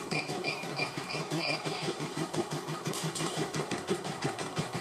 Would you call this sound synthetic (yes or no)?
yes